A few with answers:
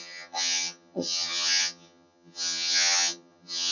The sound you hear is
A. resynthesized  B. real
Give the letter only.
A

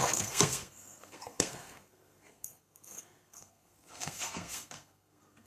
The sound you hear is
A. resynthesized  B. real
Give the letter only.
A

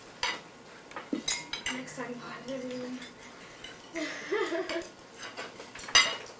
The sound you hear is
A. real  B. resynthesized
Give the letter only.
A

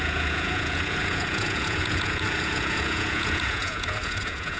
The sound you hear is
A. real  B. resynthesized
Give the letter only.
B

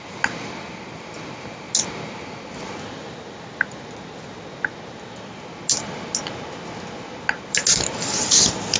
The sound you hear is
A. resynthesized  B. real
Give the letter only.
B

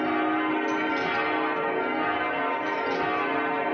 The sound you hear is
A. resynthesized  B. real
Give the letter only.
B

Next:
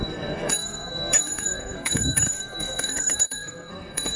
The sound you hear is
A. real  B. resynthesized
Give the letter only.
B